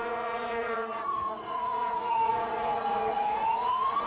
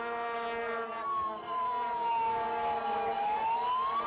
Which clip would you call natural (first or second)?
second